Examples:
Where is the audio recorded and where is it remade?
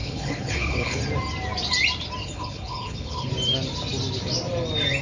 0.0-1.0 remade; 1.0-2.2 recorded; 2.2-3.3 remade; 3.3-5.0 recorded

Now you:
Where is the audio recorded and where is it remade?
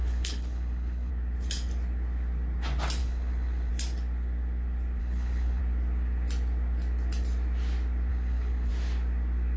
0.0-1.1 remade; 1.1-3.0 recorded; 3.0-3.7 remade; 3.7-5.0 recorded; 5.0-5.6 remade; 5.6-8.1 recorded; 8.1-8.7 remade; 8.7-9.6 recorded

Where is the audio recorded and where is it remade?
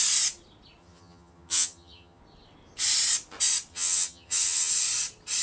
0.0-0.8 recorded; 0.8-2.2 remade; 2.2-3.7 recorded; 3.7-4.7 remade; 4.7-5.4 recorded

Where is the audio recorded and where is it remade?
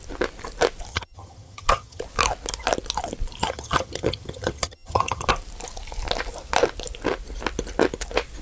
0.0-0.9 recorded; 0.9-2.0 remade; 2.0-3.4 recorded; 3.4-5.3 remade; 5.3-8.4 recorded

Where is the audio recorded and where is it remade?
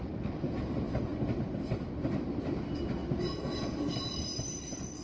0.0-1.1 remade; 1.1-1.6 recorded; 1.6-3.0 remade; 3.0-4.0 recorded; 4.0-5.0 remade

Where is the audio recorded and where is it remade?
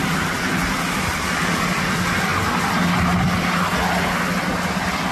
0.0-5.1 recorded